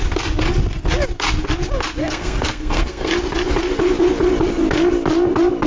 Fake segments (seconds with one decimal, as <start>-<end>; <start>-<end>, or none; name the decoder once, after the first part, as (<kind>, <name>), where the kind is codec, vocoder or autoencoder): 2.0-3.1 (codec, SNAC)